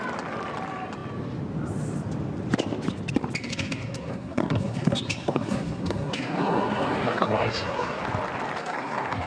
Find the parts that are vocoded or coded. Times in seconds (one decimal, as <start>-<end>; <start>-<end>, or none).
3.4-8.0; 8.6-9.3